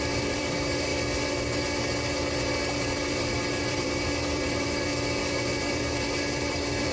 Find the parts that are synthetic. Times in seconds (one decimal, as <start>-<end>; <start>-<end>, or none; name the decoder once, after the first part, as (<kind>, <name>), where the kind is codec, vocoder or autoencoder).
0.0-0.9 (vocoder, BigVGAN v2); 2.9-4.9; 5.5-6.9